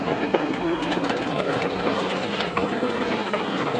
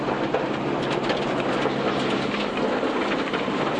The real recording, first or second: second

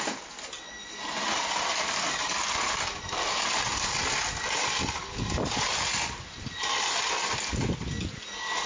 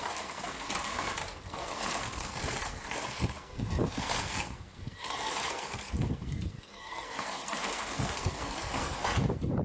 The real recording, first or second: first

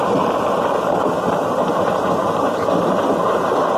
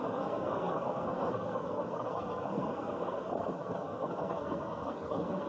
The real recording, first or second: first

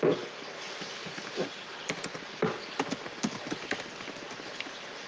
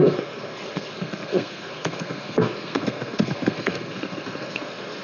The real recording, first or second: first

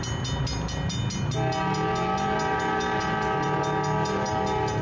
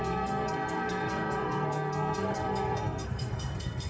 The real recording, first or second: first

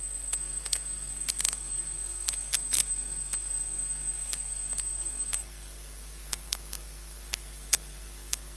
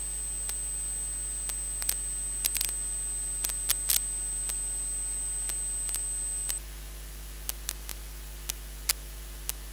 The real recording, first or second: second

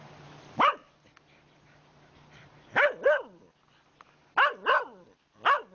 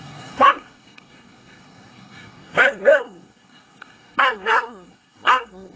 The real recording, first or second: first